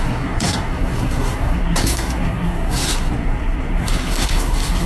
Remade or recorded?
remade